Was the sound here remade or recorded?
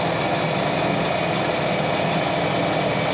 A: recorded